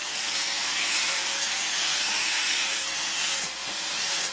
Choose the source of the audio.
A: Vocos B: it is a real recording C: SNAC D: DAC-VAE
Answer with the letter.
C